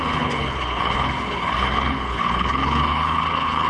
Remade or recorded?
remade